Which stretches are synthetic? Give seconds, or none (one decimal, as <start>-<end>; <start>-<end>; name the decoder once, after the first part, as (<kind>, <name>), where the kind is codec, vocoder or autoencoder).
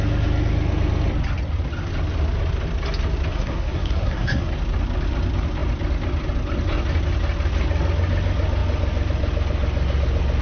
3.3-4.5 (codec, SNAC)